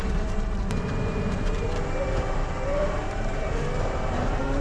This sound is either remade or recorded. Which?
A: remade